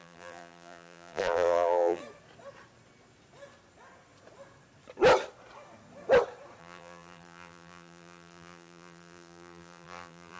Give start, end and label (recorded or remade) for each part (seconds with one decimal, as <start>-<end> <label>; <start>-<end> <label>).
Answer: 0.0-2.0 remade; 2.0-6.6 recorded; 6.6-10.4 remade